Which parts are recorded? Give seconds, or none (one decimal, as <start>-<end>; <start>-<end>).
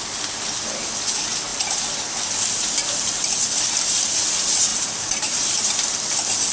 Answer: 0.0-4.7; 5.7-6.5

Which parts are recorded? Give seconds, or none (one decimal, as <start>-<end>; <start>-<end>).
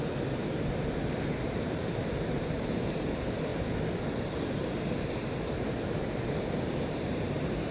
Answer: 0.4-1.2; 3.5-5.2